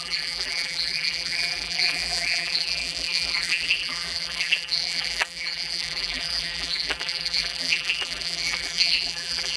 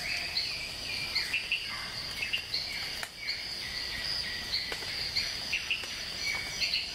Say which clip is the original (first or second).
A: second